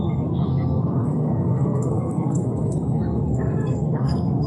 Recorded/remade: remade